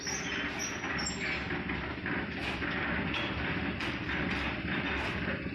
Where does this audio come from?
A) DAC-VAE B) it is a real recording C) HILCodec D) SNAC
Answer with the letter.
B